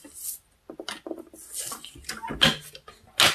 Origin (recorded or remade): recorded